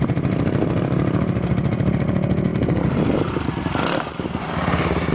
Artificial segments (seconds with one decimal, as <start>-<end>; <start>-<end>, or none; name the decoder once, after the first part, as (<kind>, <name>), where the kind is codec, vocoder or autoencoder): none